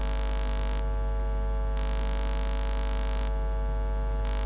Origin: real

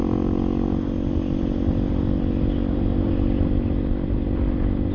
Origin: real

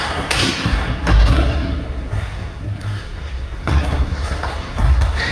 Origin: fake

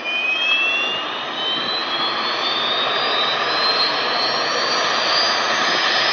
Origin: real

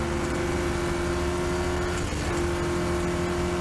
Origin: real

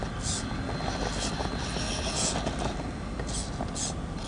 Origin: real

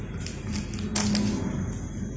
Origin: real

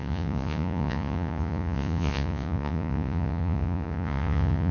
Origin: fake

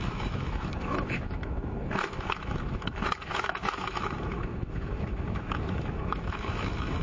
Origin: fake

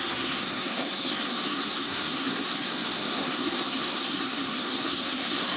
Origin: fake